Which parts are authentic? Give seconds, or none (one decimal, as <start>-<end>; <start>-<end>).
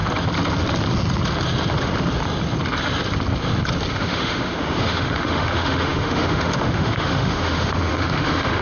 0.0-3.9